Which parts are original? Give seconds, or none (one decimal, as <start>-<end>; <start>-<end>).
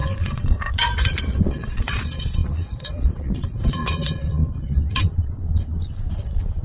none